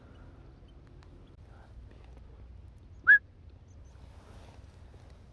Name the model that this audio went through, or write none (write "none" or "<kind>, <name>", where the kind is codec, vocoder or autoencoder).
none